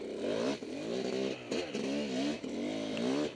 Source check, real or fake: real